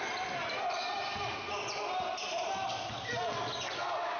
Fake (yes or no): no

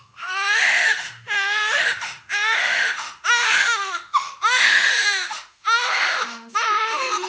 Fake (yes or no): yes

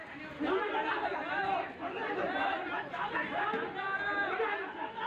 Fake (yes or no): no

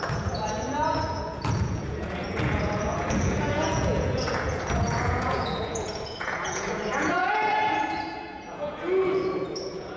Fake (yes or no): yes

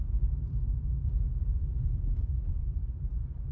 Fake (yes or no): yes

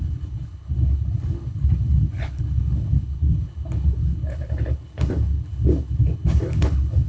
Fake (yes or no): yes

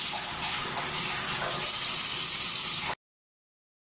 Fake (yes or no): no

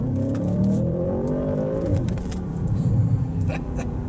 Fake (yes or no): yes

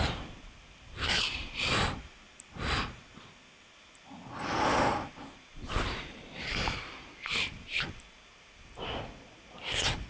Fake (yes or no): no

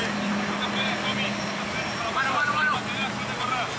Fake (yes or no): no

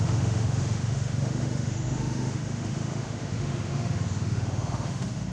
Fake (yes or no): yes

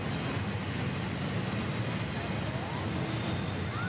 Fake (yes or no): no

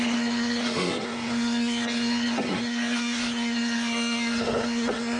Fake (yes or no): yes